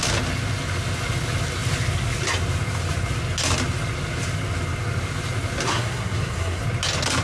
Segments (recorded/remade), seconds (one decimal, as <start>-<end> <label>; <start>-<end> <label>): 0.0-5.7 recorded; 5.7-6.6 remade; 6.6-7.2 recorded